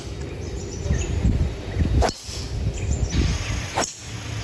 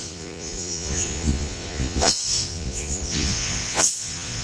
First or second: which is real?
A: first